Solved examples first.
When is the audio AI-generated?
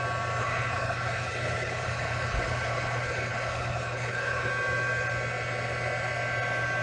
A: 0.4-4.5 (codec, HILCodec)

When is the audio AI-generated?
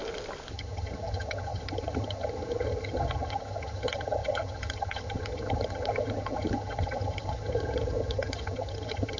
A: 0.5-9.2 (vocoder, HiFi-GAN)